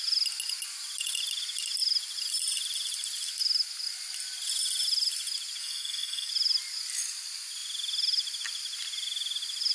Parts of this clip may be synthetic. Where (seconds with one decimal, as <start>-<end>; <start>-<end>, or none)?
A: 5.6-6.3